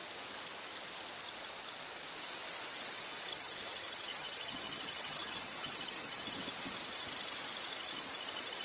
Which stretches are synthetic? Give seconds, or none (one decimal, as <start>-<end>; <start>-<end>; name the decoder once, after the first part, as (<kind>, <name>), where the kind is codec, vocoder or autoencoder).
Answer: 3.3-6.2 (vocoder, HiFi-GAN)